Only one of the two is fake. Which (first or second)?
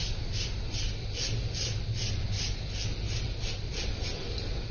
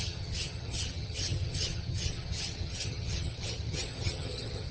second